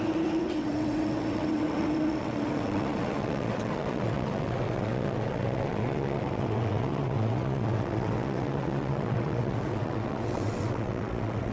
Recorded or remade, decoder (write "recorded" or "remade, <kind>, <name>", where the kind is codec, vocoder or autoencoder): remade, vocoder, WaveNeXt